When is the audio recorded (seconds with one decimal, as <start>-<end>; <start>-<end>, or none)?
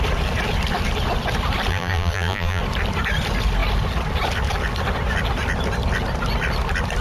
0.0-1.7; 2.6-7.0